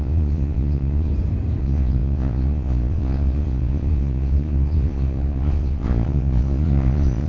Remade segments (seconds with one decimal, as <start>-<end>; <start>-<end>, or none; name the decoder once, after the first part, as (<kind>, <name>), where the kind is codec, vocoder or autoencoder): 0.0-1.1 (vocoder, Vocos); 1.6-7.3